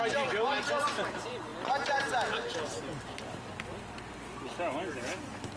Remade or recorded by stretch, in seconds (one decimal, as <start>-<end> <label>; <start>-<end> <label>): 0.0-5.6 recorded